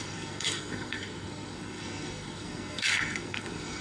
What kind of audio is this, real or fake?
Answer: fake